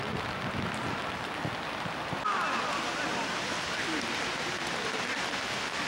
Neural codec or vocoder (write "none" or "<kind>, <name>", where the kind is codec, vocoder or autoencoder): none